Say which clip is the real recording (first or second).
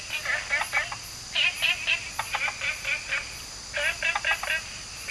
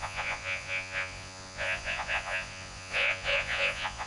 first